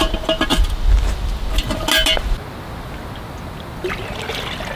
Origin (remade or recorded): recorded